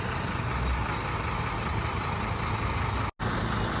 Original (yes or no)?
yes